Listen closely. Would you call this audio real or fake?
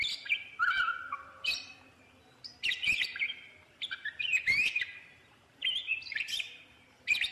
fake